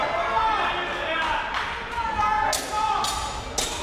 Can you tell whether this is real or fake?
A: real